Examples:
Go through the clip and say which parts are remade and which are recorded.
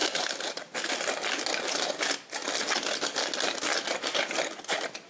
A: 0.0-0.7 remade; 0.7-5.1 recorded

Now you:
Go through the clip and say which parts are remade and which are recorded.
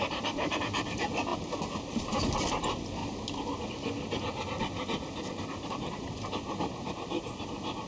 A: 0.0-1.3 remade; 1.3-1.9 recorded; 1.9-3.0 remade; 3.0-4.6 recorded; 4.6-7.9 remade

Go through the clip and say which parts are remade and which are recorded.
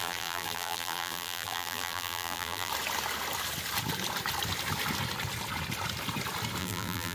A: 0.0-2.7 remade; 2.7-6.6 recorded; 6.6-7.1 remade